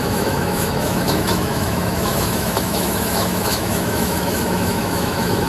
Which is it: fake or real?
fake